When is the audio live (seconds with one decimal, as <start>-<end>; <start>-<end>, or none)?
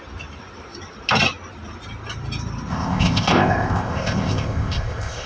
0.0-2.7